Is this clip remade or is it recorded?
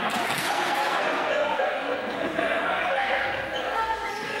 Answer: remade